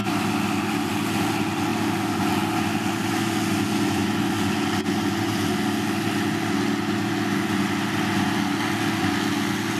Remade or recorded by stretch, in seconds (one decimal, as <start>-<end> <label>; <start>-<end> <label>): 0.0-9.8 recorded